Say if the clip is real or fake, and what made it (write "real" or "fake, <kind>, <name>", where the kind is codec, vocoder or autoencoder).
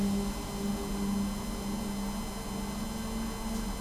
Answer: real